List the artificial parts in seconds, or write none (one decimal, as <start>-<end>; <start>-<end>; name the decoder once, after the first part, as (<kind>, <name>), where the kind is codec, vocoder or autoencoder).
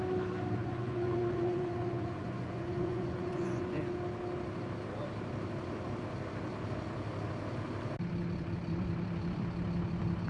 0.6-3.8 (vocoder, Vocos)